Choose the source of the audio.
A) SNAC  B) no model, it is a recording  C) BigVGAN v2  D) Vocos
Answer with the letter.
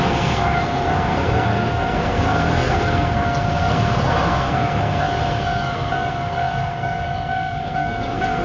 A